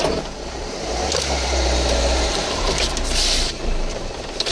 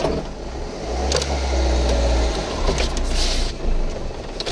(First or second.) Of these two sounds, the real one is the second